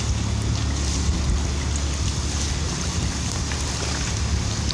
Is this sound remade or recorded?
recorded